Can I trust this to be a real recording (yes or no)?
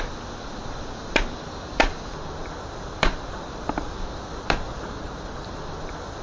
yes